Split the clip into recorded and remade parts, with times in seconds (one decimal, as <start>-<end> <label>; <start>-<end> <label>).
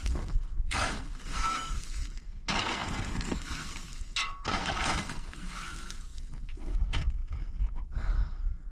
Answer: 0.0-8.7 remade